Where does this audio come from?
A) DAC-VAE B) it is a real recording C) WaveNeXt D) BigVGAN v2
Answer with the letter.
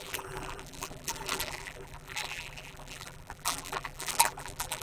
D